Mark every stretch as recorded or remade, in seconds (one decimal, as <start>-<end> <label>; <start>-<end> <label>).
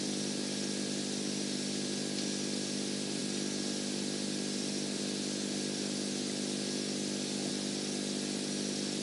0.0-9.0 recorded